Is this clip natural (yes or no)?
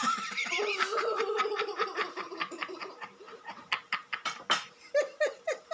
no